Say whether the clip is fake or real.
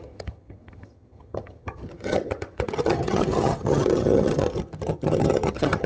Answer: fake